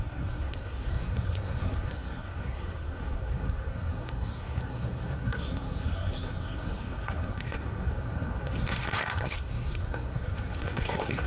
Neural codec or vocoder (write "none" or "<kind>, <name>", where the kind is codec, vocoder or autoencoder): codec, SNAC